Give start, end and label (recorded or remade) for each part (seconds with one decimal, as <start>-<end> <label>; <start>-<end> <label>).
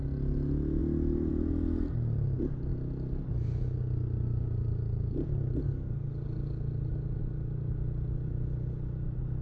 0.0-9.4 recorded